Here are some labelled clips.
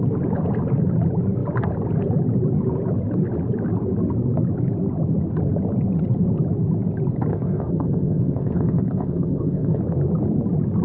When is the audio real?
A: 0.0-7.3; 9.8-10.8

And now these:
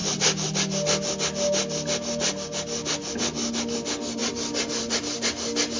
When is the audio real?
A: 0.0-5.8